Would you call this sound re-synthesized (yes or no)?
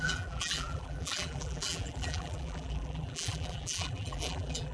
yes